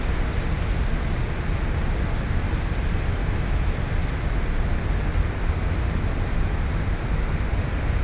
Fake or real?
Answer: real